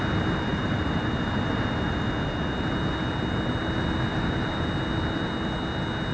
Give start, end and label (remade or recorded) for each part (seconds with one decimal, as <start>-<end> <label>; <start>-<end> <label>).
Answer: 0.0-0.5 recorded; 0.5-1.1 remade; 1.1-4.1 recorded; 4.1-4.6 remade; 4.6-6.1 recorded

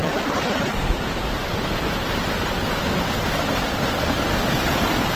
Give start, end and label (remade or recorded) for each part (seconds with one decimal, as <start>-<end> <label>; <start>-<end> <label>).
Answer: 0.0-0.9 remade; 0.9-5.2 recorded

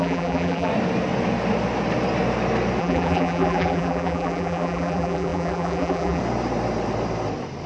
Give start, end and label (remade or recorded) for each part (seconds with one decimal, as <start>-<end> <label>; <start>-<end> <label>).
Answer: 0.0-0.7 remade; 0.7-2.8 recorded; 2.8-6.2 remade; 6.2-7.7 recorded

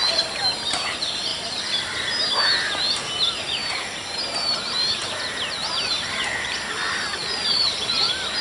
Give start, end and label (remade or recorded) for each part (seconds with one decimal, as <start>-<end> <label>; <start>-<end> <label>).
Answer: 0.0-1.3 recorded; 1.3-2.1 remade; 2.1-7.2 recorded; 7.2-7.9 remade; 7.9-8.4 recorded

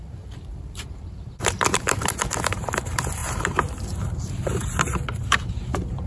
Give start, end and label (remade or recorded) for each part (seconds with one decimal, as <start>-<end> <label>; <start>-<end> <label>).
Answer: 0.0-6.1 remade

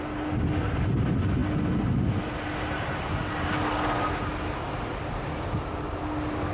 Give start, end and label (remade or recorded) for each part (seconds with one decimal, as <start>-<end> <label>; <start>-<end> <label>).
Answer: 0.0-6.5 recorded

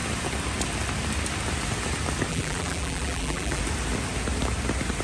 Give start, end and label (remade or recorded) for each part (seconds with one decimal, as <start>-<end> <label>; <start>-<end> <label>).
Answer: 0.0-2.3 recorded; 2.3-3.6 remade; 3.6-5.0 recorded

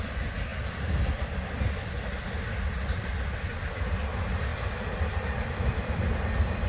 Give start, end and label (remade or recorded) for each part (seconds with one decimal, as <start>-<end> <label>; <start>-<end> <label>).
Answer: 0.0-4.5 recorded; 4.5-6.0 remade; 6.0-6.7 recorded